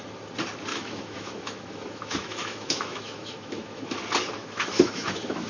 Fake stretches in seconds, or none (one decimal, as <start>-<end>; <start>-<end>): 0.7-4.0; 4.4-5.5